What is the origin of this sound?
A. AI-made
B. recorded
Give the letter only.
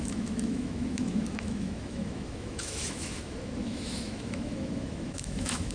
A